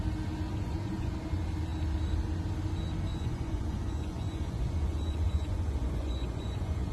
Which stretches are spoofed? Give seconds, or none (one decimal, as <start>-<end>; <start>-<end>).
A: 0.5-1.1; 3.1-6.9